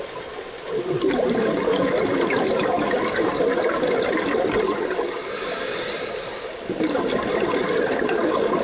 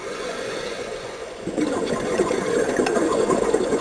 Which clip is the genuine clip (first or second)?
first